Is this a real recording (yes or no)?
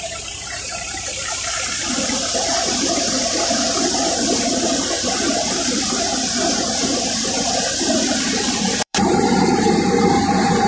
no